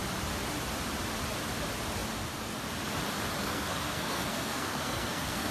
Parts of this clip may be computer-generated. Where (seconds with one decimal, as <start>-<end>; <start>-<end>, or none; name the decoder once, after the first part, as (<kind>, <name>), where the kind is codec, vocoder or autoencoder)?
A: 3.4-5.5 (codec, SNAC)